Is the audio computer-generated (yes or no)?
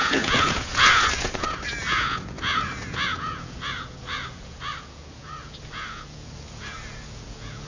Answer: yes